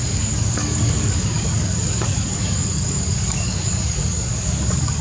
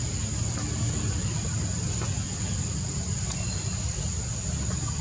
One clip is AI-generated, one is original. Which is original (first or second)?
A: second